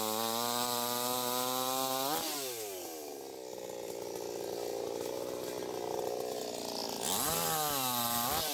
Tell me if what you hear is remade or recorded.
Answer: recorded